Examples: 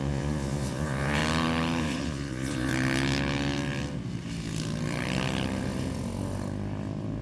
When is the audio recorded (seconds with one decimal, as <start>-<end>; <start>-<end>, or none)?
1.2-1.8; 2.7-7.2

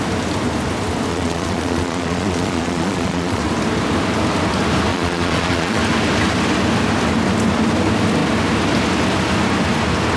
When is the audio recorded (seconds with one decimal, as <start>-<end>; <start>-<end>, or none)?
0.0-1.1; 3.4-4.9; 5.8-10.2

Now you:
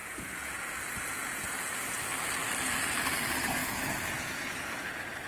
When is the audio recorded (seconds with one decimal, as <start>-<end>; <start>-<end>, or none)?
2.0-3.6